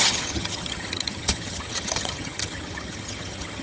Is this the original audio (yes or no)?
no